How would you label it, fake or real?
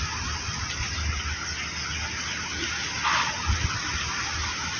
real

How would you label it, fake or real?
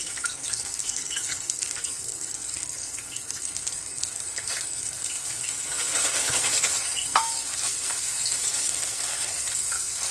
fake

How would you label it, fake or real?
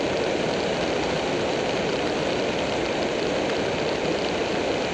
real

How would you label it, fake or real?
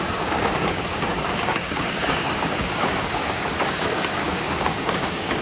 fake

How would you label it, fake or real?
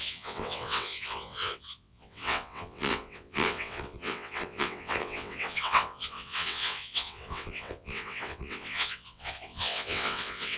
fake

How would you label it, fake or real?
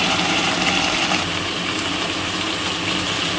real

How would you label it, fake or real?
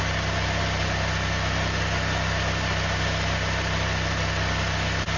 real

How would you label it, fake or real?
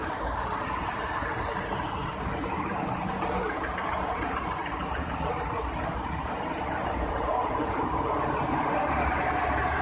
fake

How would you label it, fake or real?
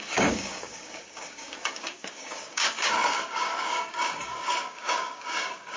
fake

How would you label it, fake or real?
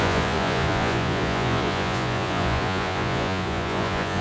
fake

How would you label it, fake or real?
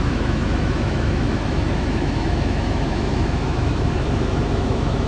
fake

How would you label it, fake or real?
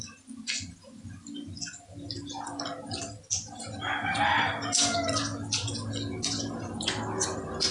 real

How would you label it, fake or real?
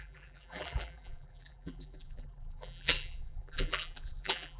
fake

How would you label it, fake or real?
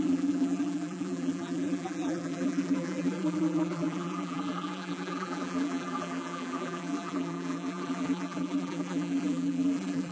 fake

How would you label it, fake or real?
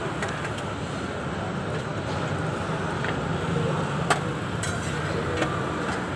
real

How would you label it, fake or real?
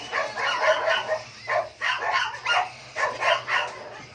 real